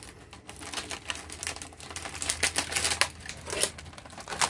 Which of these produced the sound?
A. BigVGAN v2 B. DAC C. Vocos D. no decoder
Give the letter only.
D